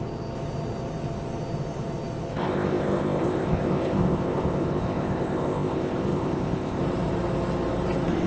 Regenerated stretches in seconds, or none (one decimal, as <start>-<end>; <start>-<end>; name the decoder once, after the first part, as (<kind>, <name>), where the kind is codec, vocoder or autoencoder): 2.3-6.8 (codec, ZipCodec)